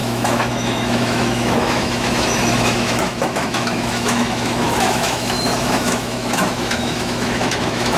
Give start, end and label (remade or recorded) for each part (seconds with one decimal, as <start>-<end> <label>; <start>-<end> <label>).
0.0-8.0 remade